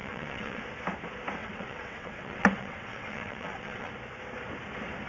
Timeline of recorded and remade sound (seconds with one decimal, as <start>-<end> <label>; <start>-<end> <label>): 0.0-0.6 remade; 0.6-1.4 recorded; 1.4-3.9 remade; 3.9-5.1 recorded